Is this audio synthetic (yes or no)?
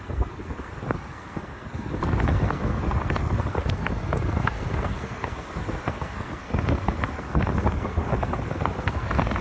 yes